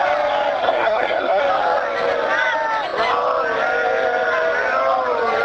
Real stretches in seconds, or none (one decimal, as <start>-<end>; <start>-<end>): 0.0-0.6; 1.4-5.4